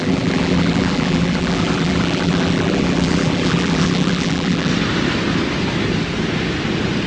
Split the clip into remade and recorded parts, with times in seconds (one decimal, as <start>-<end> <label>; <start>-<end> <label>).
0.0-4.7 remade; 4.7-7.1 recorded